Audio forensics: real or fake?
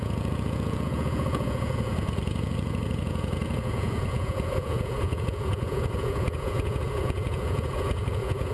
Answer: fake